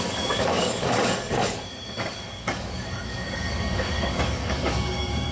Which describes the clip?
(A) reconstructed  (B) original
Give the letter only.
A